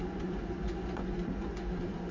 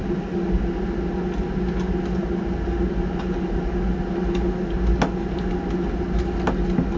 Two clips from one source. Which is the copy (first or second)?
first